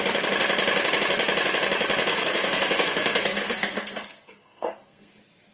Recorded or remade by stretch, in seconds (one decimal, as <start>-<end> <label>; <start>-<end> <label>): 0.0-2.1 recorded; 2.1-5.1 remade; 5.1-5.5 recorded